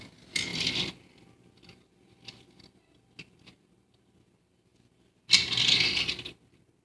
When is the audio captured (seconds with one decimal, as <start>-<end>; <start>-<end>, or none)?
0.0-6.8